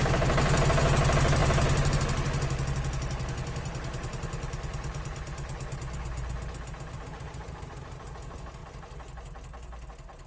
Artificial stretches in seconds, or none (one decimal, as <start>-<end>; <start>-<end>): none